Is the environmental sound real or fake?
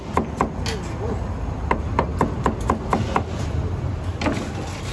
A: real